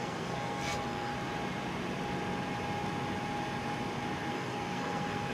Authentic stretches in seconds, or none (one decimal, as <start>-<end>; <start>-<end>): 1.1-4.3